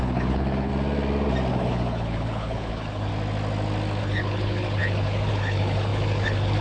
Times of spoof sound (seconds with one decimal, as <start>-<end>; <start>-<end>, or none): 0.0-0.7; 1.5-3.1; 4.0-6.6